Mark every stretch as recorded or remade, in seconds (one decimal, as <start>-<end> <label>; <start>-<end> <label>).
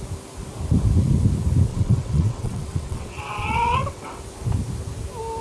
0.0-1.7 recorded; 1.7-4.2 remade; 4.2-5.4 recorded